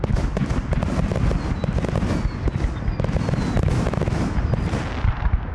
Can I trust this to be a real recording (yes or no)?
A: yes